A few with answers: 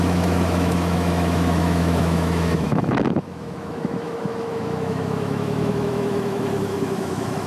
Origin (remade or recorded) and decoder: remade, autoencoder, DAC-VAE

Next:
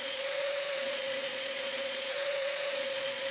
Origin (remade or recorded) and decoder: remade, vocoder, Vocos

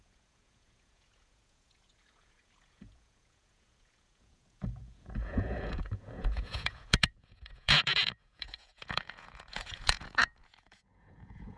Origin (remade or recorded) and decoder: remade, vocoder, Vocos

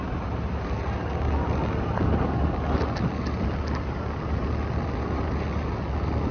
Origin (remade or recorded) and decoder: recorded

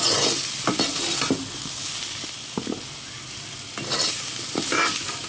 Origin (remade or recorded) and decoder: recorded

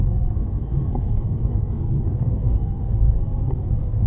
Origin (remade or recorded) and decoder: remade, codec, SNAC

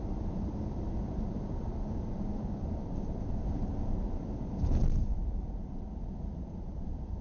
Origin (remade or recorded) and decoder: remade, vocoder, BigVGAN v2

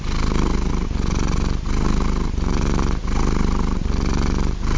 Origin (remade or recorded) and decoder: recorded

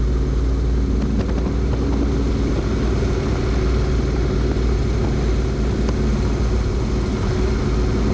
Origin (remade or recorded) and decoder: recorded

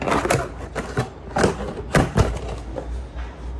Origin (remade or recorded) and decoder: recorded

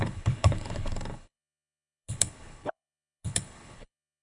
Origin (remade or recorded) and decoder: remade, codec, HILCodec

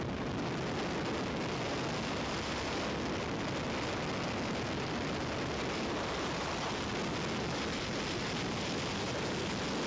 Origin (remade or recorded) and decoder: recorded